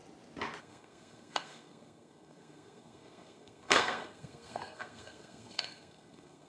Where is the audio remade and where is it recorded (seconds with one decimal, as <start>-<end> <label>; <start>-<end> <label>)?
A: 0.0-0.6 recorded; 0.6-6.5 remade